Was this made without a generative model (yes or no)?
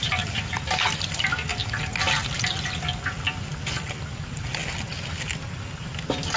yes